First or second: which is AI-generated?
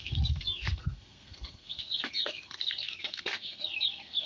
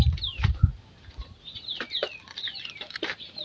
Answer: first